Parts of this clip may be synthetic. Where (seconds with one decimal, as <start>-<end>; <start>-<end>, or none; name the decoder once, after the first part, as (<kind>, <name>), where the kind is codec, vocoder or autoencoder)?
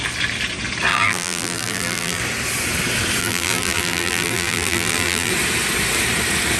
0.9-2.2 (vocoder, BigVGAN v2); 3.2-5.3